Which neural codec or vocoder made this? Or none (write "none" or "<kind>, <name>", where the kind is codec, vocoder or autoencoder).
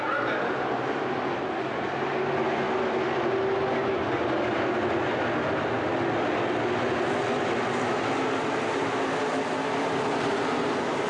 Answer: none